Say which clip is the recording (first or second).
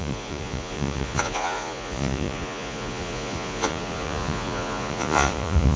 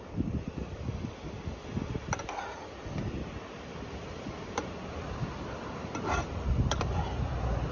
second